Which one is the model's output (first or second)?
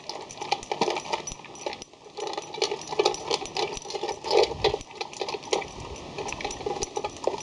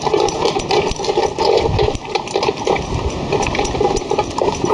second